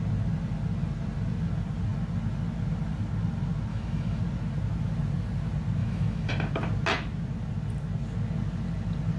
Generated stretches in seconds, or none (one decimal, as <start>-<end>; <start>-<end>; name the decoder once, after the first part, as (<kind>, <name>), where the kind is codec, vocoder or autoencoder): 3.7-4.2 (autoencoder, DAC-VAE); 5.8-6.3